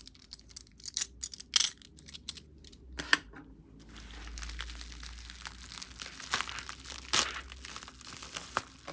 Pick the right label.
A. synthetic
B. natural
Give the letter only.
B